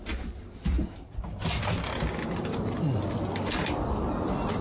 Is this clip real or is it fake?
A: real